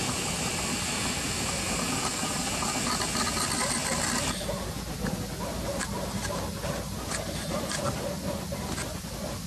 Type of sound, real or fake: real